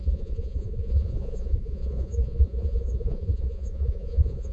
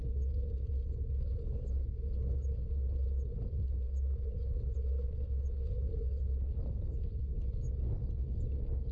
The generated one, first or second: first